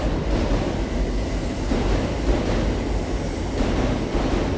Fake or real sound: real